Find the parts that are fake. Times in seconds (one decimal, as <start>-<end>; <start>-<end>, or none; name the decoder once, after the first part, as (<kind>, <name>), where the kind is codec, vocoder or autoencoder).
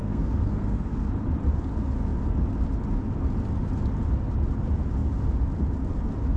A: 0.0-1.1 (codec, SNAC)